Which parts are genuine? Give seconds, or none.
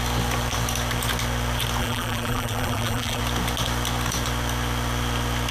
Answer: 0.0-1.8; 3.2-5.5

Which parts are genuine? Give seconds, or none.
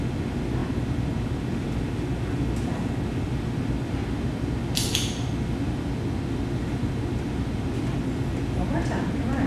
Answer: 0.0-9.5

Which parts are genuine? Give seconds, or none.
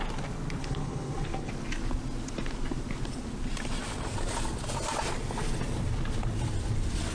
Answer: 0.0-0.6; 1.5-7.1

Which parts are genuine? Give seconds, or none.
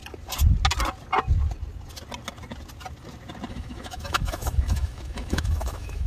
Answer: 0.0-3.5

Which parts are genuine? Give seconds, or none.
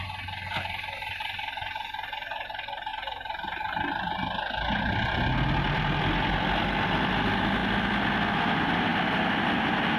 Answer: 0.0-10.0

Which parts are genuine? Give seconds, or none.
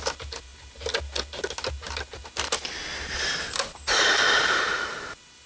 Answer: 0.0-2.9; 4.6-5.5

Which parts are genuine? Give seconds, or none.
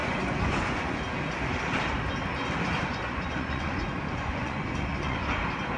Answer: 1.0-2.9; 5.3-5.8